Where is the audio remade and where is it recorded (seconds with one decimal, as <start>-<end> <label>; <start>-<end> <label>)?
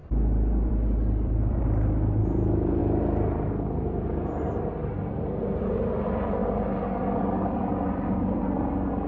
0.0-0.7 recorded; 0.7-2.8 remade; 2.8-5.6 recorded; 5.6-6.4 remade; 6.4-7.9 recorded; 7.9-9.1 remade